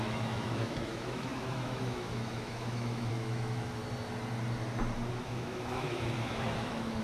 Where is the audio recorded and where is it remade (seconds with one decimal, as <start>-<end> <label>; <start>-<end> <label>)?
0.0-3.8 remade; 3.8-5.1 recorded; 5.1-7.0 remade